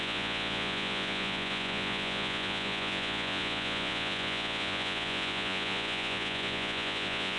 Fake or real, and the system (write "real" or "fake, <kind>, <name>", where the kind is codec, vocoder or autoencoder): fake, vocoder, Vocos